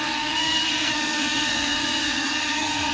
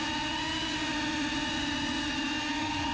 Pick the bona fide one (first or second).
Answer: second